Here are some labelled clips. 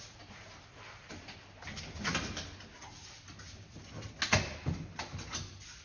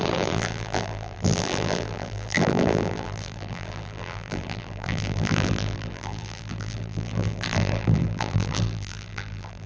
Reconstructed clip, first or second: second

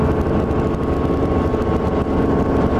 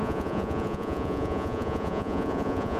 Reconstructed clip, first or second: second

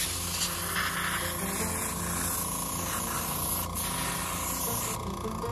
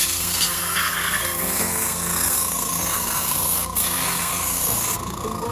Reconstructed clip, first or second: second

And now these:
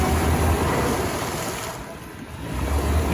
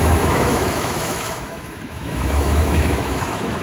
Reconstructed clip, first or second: second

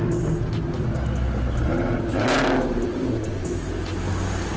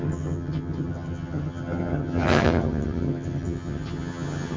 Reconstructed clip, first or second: second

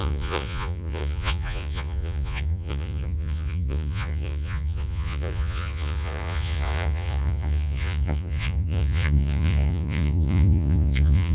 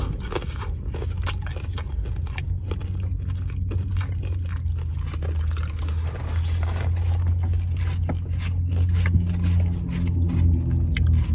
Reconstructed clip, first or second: first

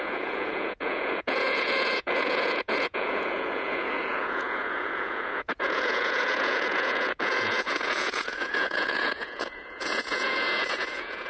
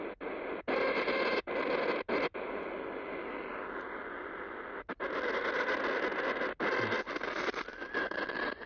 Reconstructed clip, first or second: first